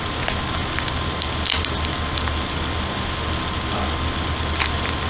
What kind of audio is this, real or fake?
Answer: real